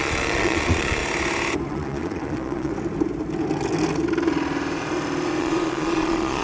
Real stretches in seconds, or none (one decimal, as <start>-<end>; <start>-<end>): 1.0-1.7; 2.7-5.4